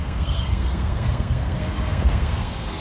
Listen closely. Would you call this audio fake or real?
fake